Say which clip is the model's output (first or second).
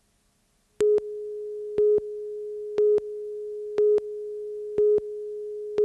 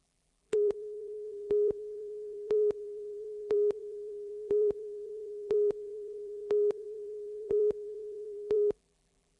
second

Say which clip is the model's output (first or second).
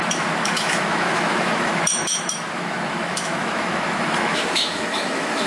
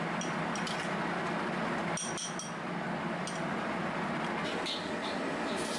first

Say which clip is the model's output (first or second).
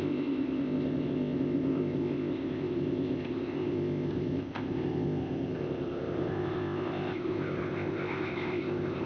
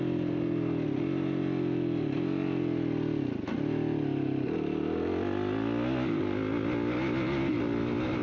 first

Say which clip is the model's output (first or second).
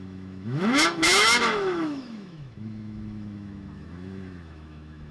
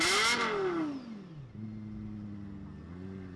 first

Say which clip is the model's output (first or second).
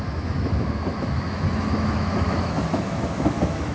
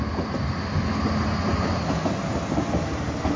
first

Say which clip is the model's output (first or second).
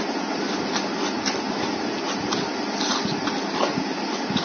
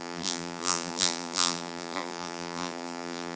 second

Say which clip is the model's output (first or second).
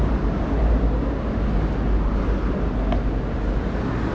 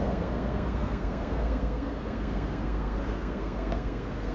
second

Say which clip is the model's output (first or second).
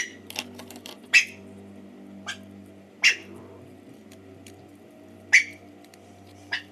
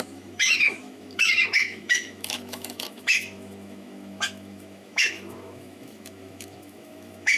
second